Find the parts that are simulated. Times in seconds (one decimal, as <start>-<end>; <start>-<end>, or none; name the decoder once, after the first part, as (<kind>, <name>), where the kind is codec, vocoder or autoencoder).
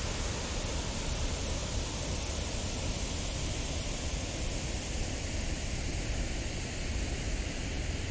none